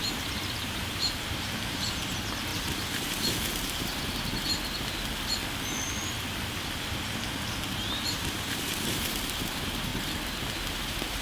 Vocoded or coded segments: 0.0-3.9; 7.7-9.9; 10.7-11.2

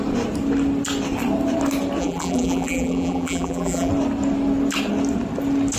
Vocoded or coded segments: 2.0-3.9

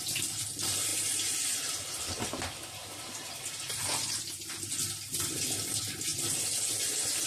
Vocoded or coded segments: none